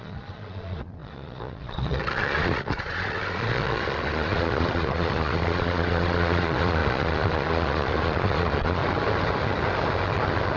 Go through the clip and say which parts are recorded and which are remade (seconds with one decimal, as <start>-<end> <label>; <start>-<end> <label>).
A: 0.0-8.8 remade; 8.8-10.6 recorded